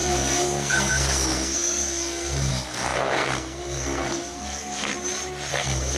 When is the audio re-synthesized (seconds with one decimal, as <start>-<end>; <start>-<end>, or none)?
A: 0.0-4.9; 5.5-6.0